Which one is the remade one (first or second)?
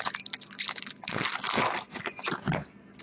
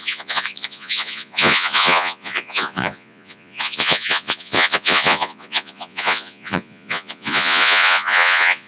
second